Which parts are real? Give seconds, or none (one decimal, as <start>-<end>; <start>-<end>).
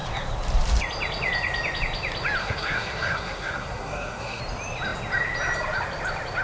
0.0-2.4; 4.4-6.4